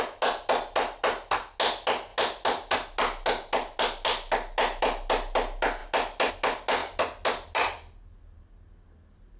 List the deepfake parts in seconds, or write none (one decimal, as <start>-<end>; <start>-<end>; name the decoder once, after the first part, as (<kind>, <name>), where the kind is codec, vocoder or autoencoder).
none